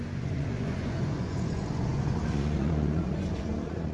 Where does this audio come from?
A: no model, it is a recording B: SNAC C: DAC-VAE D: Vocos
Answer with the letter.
D